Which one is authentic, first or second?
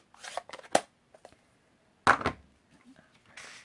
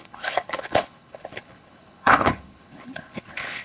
first